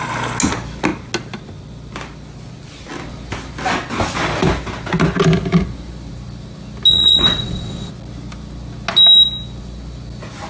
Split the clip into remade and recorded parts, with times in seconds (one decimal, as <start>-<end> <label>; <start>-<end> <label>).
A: 0.0-6.9 recorded; 6.9-7.9 remade; 7.9-10.5 recorded